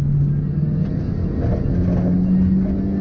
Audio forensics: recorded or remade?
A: recorded